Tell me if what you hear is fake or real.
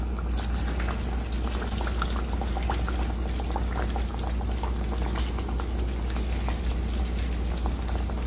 real